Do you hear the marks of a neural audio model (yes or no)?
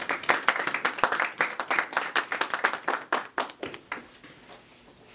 no